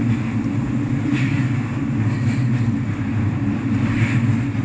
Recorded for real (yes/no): yes